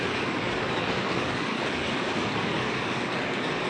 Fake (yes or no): yes